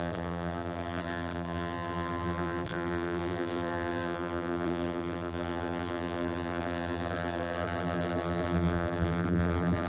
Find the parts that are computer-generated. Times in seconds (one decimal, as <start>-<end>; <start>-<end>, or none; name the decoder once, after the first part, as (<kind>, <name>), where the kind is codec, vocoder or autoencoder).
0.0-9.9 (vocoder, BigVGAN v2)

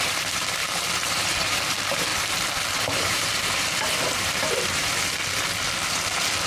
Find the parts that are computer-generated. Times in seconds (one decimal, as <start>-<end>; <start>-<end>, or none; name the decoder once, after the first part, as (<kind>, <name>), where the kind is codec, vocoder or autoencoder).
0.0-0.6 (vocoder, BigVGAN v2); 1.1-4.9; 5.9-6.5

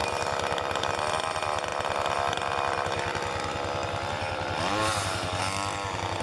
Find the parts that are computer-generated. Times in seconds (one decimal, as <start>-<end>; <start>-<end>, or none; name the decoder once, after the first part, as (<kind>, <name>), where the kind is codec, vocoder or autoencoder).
none

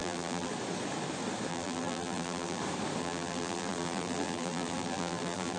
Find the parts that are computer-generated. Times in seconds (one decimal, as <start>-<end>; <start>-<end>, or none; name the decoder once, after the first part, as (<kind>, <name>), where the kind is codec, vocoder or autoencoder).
0.0-0.5 (vocoder, BigVGAN v2); 1.5-2.6; 3.0-5.6

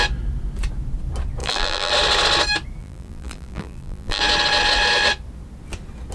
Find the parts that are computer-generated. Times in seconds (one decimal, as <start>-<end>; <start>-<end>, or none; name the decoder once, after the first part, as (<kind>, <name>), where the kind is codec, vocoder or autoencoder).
1.4-1.9 (vocoder, BigVGAN v2); 2.8-4.2

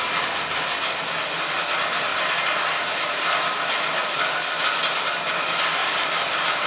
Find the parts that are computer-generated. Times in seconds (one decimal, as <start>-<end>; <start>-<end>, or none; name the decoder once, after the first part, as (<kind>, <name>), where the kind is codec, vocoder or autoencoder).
2.1-3.3 (vocoder, BigVGAN v2); 5.8-6.7

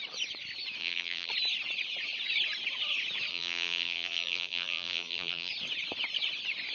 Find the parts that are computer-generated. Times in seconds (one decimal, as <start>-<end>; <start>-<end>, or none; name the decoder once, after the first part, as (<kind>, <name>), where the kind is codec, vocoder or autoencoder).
0.8-1.3 (vocoder, BigVGAN v2); 3.3-5.5